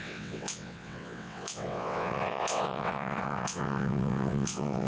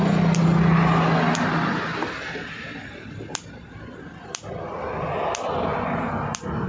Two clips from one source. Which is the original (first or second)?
second